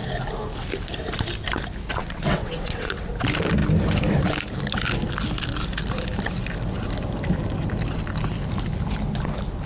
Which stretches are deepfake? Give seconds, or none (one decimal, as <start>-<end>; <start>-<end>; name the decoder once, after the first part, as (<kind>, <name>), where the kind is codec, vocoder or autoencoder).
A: 2.0-3.1 (vocoder, WaveNeXt)